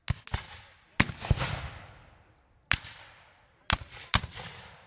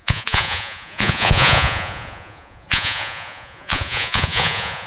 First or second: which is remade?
second